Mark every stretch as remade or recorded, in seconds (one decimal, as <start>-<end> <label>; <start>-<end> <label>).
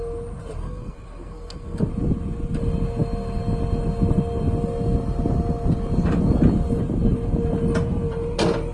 0.0-0.6 recorded; 0.6-1.9 remade; 1.9-8.7 recorded